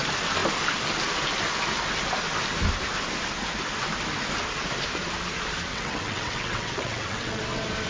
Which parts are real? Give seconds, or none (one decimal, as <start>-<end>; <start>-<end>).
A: 0.0-5.7; 7.4-7.9